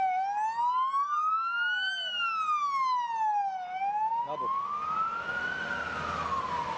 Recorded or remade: recorded